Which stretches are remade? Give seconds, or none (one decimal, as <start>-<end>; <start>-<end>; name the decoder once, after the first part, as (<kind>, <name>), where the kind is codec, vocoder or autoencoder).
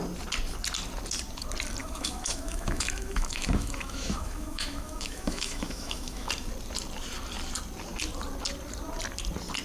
1.8-6.3 (autoencoder, DAC-VAE)